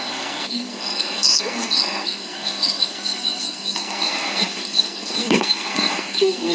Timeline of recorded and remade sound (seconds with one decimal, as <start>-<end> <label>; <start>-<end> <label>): 0.0-6.5 remade